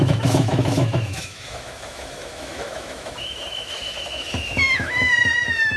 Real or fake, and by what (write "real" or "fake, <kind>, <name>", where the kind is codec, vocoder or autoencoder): fake, autoencoder, DAC-VAE